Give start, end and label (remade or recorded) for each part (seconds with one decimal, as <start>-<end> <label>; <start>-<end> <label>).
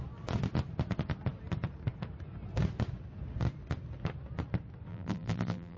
0.0-4.9 recorded; 4.9-5.8 remade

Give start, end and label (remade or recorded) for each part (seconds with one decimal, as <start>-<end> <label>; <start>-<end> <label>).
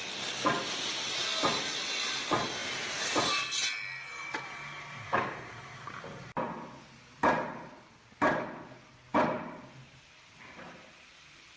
0.0-2.6 recorded; 2.6-3.2 remade; 3.2-11.6 recorded